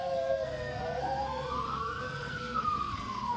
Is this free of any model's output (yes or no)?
no